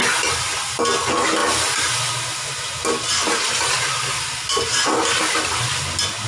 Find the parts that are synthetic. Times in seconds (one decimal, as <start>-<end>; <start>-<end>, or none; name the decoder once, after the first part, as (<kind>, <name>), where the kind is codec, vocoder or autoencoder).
none